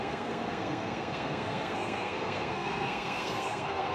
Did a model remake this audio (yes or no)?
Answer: yes